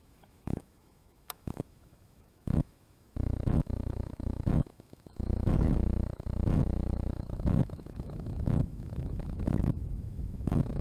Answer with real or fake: fake